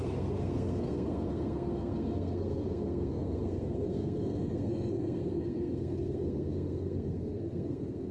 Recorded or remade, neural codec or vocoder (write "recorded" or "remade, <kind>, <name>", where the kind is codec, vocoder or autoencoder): remade, codec, SNAC